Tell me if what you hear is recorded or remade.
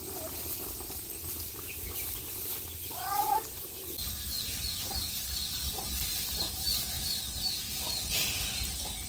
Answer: recorded